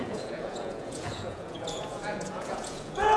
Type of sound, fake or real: fake